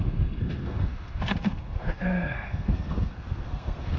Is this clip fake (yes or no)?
yes